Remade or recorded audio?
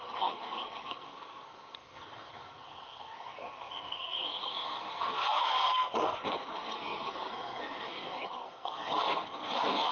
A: remade